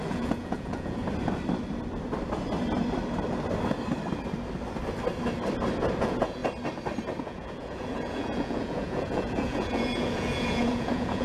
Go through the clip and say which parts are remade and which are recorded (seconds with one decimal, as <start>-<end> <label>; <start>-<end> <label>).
0.0-1.0 remade; 1.0-6.0 recorded; 6.0-6.4 remade; 6.4-7.2 recorded; 7.2-11.2 remade